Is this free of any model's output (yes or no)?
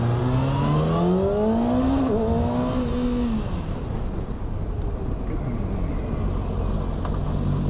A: yes